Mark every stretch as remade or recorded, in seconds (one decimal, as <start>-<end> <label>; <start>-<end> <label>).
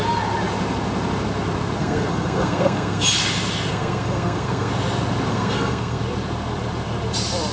0.0-1.8 recorded; 1.8-3.0 remade; 3.0-3.7 recorded; 3.7-4.7 remade; 4.7-5.3 recorded; 5.3-6.0 remade; 6.0-7.5 recorded